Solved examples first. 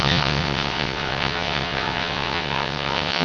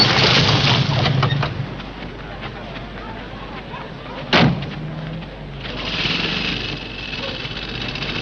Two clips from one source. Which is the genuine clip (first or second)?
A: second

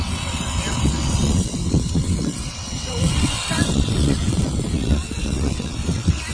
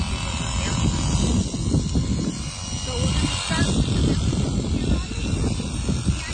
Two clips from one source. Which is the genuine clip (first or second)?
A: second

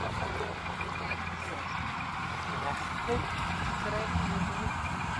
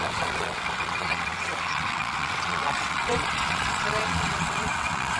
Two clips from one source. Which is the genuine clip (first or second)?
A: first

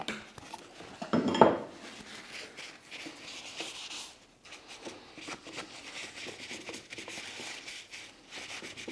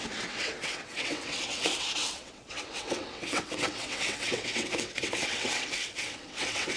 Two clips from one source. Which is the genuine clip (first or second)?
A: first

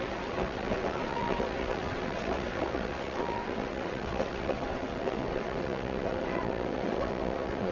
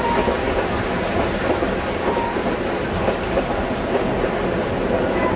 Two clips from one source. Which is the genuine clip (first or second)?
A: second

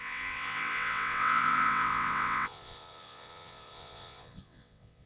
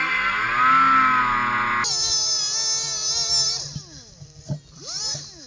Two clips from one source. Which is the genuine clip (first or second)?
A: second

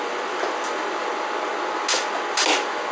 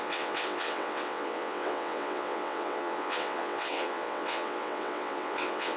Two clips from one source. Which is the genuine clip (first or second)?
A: first